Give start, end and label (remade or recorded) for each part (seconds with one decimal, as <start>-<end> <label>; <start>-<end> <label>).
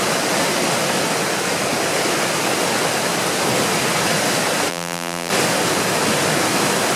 0.0-4.7 recorded; 4.7-5.3 remade; 5.3-7.0 recorded